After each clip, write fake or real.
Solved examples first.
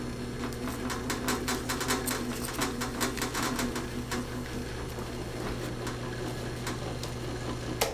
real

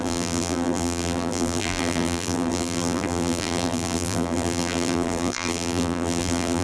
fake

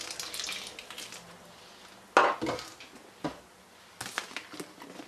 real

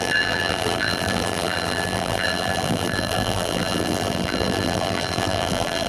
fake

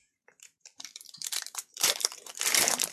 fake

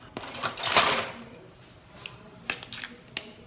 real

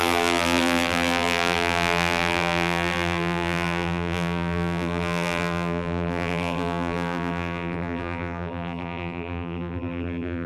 fake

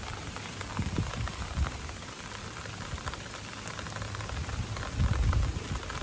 fake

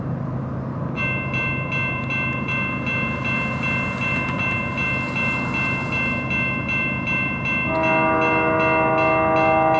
real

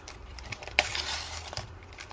fake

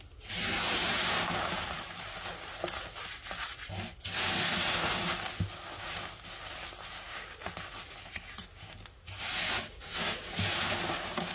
real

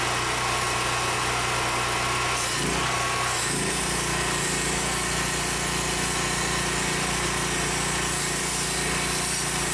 real